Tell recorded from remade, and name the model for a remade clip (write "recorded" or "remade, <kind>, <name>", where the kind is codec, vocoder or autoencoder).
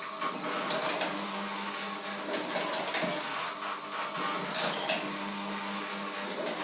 recorded